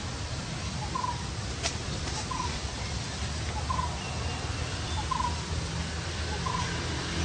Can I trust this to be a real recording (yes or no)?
yes